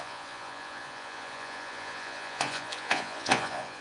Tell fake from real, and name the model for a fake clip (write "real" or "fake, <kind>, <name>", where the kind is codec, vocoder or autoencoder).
fake, vocoder, Vocos